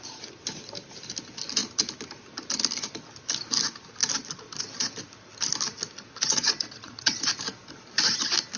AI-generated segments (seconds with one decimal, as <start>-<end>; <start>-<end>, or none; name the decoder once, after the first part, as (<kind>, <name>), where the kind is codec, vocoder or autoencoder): 6.3-7.3 (vocoder, Vocos)